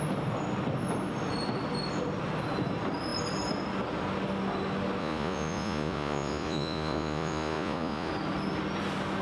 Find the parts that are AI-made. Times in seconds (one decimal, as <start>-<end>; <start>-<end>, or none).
5.0-8.1